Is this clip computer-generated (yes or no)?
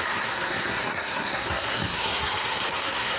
yes